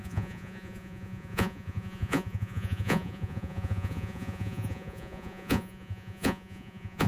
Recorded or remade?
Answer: remade